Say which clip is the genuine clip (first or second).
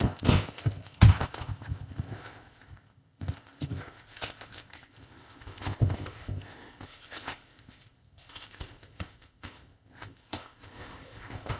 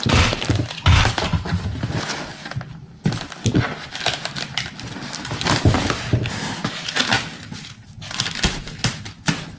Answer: second